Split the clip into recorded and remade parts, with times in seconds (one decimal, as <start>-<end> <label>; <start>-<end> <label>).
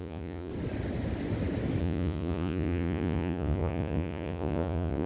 0.0-0.5 remade; 0.5-1.8 recorded; 1.8-5.1 remade